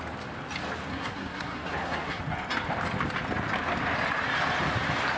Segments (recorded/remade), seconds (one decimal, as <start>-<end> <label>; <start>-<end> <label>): 0.0-0.9 recorded; 0.9-2.2 remade; 2.2-5.2 recorded